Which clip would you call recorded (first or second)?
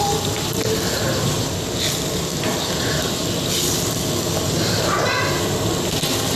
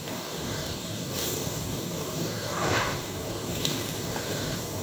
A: first